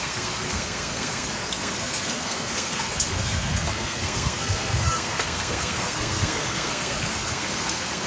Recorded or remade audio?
remade